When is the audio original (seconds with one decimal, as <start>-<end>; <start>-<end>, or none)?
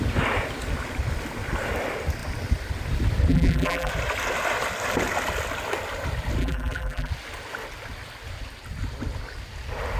0.0-3.3; 3.9-6.4; 7.1-10.0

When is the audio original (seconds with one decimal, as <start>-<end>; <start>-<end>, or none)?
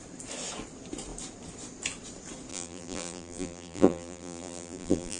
0.0-2.5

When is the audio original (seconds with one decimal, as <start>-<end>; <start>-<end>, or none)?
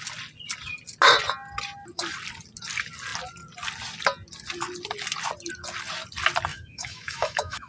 0.0-6.5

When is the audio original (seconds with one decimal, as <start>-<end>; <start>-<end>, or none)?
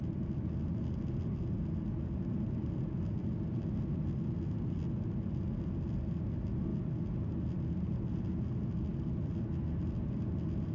0.0-10.7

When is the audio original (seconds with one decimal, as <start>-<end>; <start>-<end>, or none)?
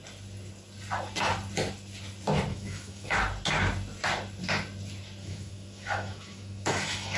0.0-2.5; 3.2-5.2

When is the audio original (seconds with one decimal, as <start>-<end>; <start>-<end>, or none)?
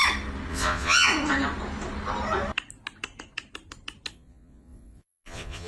0.0-0.5; 1.1-4.1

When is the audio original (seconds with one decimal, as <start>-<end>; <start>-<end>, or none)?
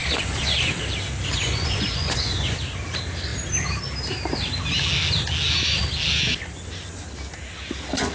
0.7-1.3; 2.8-8.1